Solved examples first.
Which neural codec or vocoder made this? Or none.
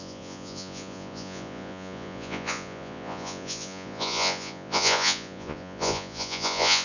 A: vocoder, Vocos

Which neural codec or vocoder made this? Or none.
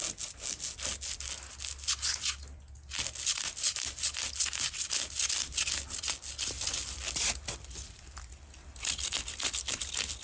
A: none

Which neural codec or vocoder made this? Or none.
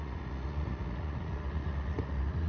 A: vocoder, Vocos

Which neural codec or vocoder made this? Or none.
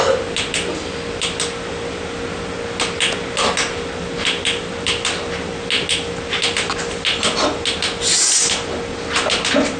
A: none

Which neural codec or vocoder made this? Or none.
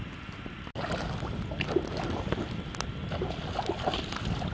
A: none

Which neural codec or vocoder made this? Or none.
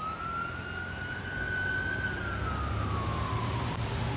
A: none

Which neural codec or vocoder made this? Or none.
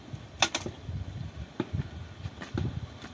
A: none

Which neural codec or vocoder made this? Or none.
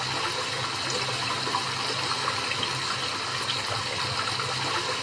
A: none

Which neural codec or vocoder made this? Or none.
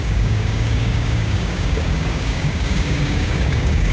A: codec, DAC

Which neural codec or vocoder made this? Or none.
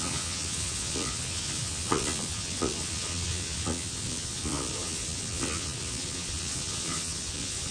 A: vocoder, Vocos